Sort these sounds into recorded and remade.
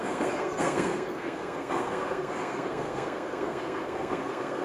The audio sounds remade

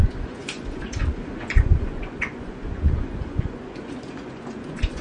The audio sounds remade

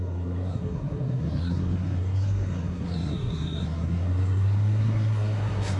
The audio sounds remade